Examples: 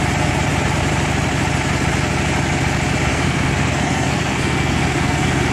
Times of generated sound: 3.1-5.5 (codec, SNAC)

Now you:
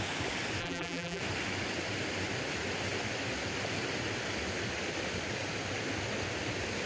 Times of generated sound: 0.6-1.2 (vocoder, BigVGAN v2)

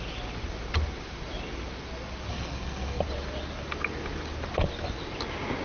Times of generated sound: 2.3-3.0 (codec, SNAC)

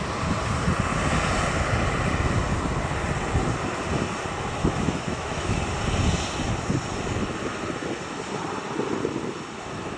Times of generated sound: 4.6-5.6 (autoencoder, DAC-VAE)

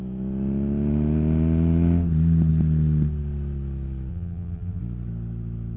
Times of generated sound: 4.1-4.8 (vocoder, BigVGAN v2)